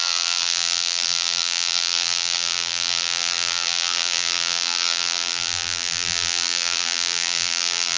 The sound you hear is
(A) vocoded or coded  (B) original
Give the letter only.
A